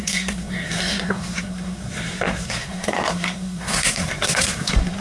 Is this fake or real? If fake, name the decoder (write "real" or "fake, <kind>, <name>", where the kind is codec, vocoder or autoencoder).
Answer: fake, codec, SNAC